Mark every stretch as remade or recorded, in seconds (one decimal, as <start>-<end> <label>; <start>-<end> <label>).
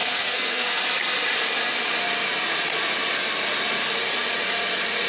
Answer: 0.0-0.8 remade; 0.8-5.1 recorded